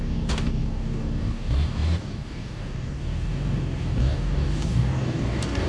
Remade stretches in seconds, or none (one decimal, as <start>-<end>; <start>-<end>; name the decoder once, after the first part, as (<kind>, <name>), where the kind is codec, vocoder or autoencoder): 0.0-5.7 (codec, DAC)